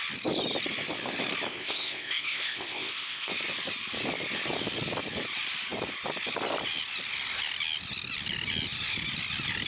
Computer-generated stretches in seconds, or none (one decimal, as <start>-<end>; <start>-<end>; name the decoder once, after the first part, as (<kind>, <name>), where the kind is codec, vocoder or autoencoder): 1.5-3.3 (codec, ZipCodec)